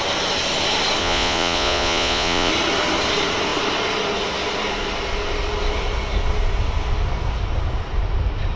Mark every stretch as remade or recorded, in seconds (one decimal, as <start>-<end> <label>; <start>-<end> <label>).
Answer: 0.0-1.0 recorded; 1.0-2.5 remade; 2.5-8.6 recorded

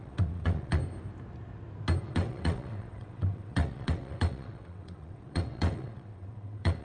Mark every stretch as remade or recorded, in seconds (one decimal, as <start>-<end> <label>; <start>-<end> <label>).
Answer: 0.0-0.8 remade; 0.8-2.0 recorded; 2.0-6.8 remade